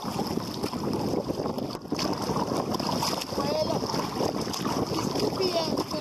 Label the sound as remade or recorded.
recorded